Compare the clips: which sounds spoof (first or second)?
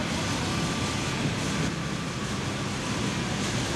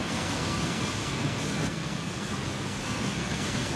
second